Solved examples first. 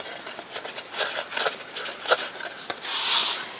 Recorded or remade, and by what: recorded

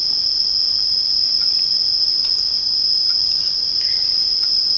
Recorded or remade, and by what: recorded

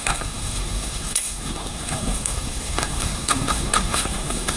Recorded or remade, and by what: remade, codec, SNAC